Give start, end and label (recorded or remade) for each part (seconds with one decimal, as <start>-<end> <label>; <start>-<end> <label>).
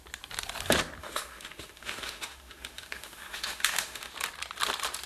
0.0-1.0 recorded; 1.0-4.1 remade; 4.1-5.1 recorded